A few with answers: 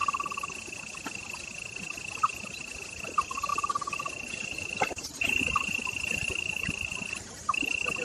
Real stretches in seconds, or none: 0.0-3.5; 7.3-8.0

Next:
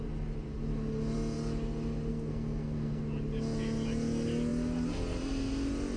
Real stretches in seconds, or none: 0.0-2.1; 3.0-6.0

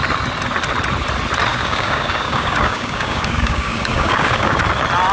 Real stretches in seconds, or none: 0.0-1.5; 4.6-5.1

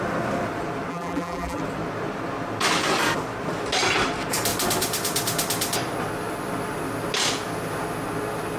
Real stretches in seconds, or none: 0.0-0.9; 1.6-8.6